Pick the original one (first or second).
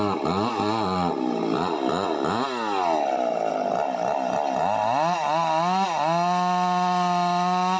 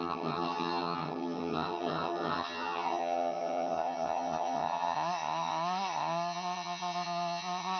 first